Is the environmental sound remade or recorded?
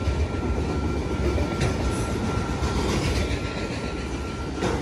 recorded